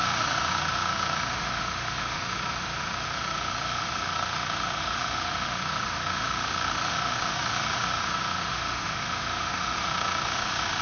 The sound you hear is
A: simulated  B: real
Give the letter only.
A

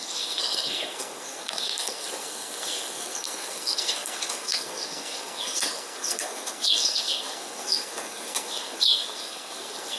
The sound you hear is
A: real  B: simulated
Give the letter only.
B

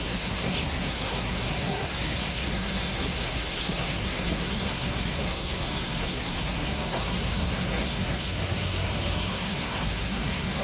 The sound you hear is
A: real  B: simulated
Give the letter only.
B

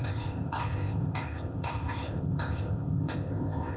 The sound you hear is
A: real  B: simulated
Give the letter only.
B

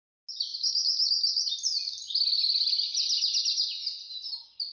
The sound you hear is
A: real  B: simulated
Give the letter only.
A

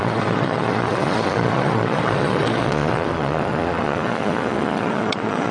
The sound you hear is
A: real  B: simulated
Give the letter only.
B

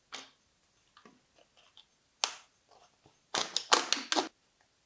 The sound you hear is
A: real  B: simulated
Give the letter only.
A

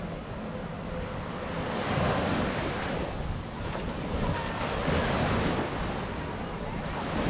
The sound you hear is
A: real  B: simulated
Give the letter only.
A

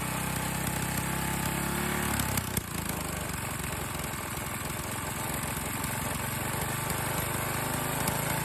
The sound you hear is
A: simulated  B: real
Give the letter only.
B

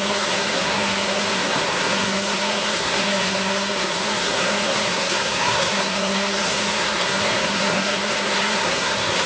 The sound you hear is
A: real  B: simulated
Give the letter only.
B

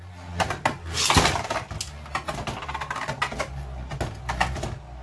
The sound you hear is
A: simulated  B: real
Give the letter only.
B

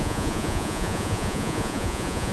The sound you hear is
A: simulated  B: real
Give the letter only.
A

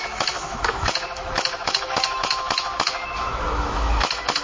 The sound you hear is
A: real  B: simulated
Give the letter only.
B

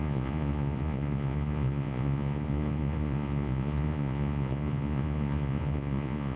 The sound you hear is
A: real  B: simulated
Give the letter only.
B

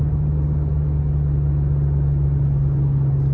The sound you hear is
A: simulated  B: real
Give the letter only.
B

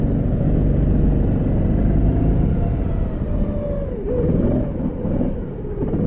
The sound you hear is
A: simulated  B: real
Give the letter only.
B